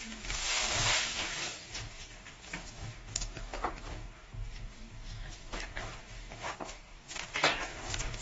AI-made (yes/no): yes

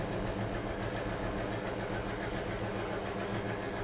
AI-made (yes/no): yes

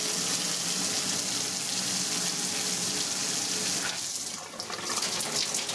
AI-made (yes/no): no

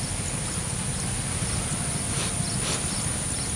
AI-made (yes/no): no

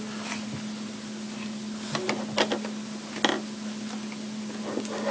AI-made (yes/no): no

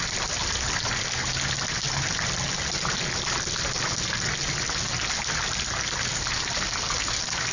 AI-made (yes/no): no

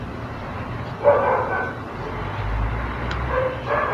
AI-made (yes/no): no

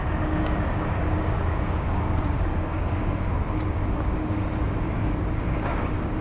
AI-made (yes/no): yes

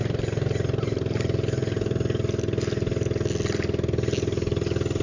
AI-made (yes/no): no